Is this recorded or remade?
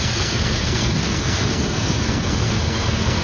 remade